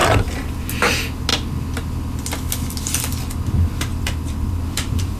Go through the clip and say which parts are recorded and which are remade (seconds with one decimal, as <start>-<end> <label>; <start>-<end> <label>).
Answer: 0.0-0.7 remade; 0.7-3.9 recorded; 3.9-5.2 remade